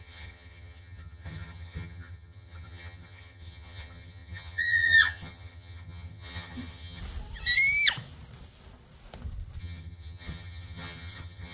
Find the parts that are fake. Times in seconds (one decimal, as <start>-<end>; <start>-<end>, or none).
0.0-7.0; 9.6-11.5